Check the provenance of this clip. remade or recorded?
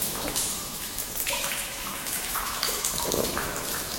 remade